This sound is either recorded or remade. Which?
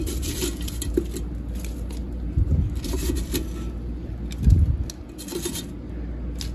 recorded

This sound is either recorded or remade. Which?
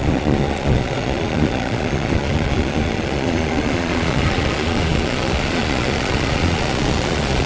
remade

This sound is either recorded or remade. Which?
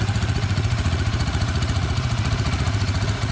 remade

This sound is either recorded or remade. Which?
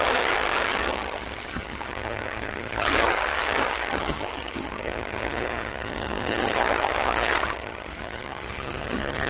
remade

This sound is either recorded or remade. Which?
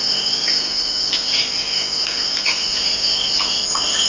recorded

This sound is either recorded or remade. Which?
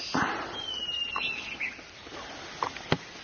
recorded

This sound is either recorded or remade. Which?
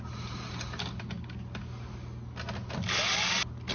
recorded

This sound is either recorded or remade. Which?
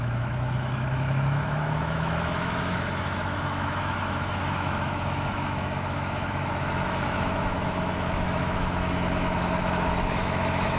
remade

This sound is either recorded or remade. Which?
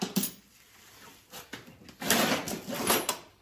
recorded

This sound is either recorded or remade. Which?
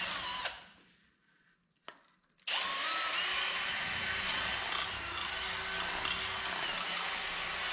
recorded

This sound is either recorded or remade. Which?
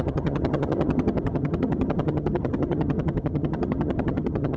remade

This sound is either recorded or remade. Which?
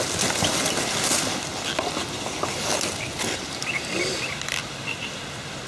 recorded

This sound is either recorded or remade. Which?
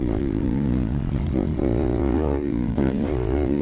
remade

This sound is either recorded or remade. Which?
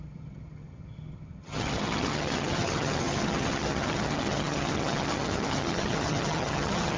remade